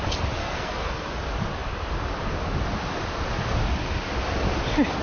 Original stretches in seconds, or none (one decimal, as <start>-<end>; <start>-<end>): 0.0-0.4; 1.1-5.0